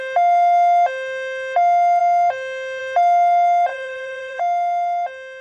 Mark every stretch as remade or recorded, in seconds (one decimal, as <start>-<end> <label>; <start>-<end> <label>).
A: 0.0-3.7 recorded; 3.7-4.4 remade; 4.4-5.4 recorded